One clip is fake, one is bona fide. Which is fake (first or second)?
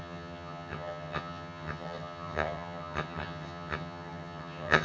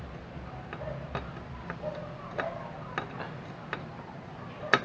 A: first